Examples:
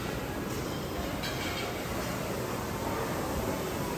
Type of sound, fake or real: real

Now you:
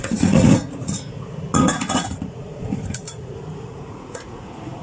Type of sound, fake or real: fake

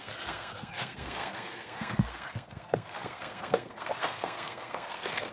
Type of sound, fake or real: fake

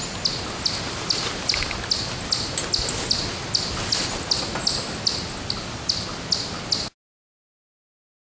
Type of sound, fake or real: real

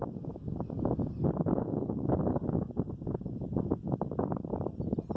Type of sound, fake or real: real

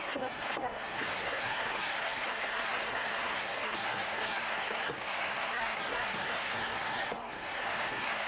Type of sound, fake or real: fake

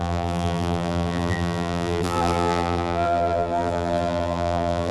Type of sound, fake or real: fake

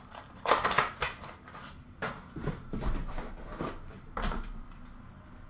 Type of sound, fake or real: real